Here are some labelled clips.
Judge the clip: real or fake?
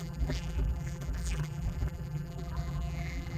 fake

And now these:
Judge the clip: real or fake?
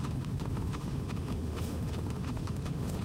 fake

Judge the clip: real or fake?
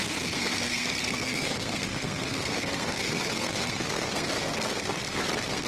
fake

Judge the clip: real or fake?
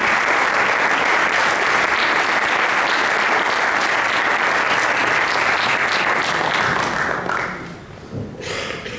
real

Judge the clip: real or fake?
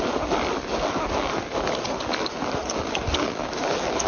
real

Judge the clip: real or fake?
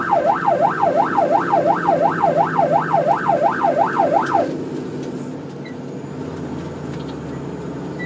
real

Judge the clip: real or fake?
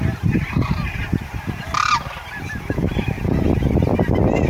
real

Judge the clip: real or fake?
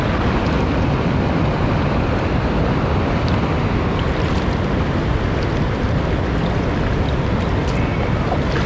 real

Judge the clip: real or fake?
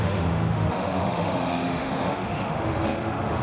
fake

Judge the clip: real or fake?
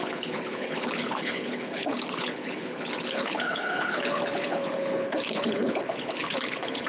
fake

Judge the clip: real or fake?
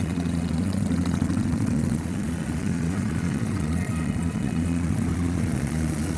fake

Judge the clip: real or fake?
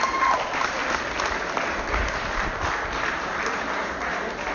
real